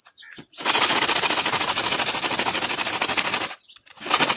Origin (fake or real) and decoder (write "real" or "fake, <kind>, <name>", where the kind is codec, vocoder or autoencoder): real